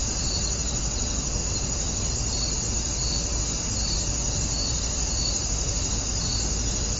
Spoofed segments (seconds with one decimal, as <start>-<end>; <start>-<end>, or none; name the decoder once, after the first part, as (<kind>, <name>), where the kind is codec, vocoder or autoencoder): 0.0-0.7 (vocoder, BigVGAN v2); 1.4-2.1; 4.2-5.9